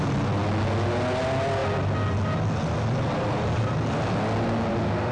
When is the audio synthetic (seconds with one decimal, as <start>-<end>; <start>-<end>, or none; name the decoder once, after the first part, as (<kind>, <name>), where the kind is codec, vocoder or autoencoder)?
none